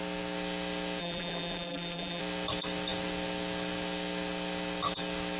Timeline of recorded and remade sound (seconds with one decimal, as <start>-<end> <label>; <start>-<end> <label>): 0.0-1.0 recorded; 1.0-2.2 remade; 2.2-5.4 recorded